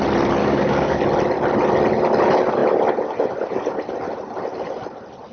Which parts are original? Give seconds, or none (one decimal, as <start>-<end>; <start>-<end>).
0.0-0.4; 1.0-5.3